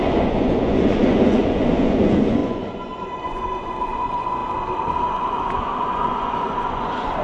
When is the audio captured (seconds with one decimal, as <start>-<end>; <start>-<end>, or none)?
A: 4.4-5.1